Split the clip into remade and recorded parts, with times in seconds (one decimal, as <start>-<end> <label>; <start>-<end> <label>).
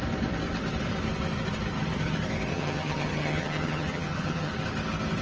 0.0-2.5 recorded; 2.5-4.5 remade; 4.5-5.2 recorded